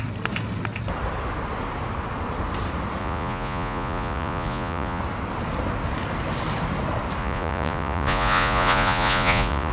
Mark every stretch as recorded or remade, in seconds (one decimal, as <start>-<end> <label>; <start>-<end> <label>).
0.0-3.0 recorded; 3.0-5.0 remade; 5.0-7.2 recorded; 7.2-9.7 remade